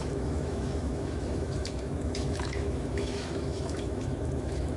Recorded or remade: remade